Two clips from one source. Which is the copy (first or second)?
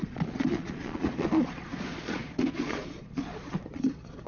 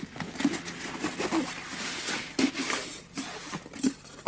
first